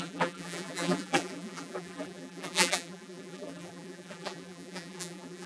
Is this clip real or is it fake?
fake